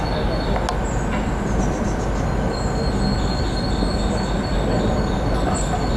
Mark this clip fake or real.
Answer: real